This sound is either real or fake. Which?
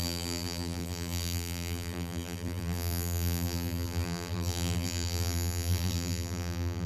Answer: fake